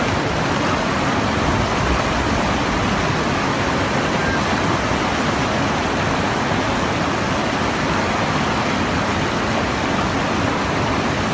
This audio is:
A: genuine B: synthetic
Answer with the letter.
A